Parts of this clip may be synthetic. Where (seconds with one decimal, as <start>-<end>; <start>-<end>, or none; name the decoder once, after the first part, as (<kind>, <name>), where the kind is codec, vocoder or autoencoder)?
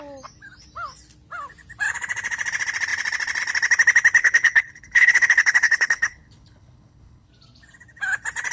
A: 4.2-7.3 (codec, HILCodec)